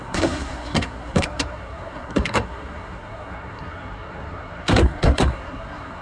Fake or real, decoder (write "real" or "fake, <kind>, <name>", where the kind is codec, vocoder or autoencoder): fake, codec, SNAC